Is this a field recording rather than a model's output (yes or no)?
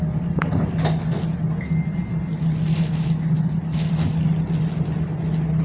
yes